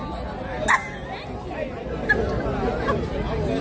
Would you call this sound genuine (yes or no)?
yes